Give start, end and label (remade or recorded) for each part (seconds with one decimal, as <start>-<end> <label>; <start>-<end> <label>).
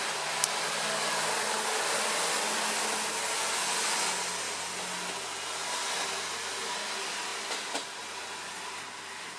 0.0-9.4 recorded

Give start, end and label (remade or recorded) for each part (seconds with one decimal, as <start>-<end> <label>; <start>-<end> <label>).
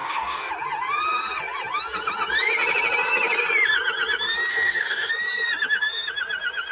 0.0-0.5 remade; 0.5-4.5 recorded; 4.5-5.1 remade; 5.1-6.7 recorded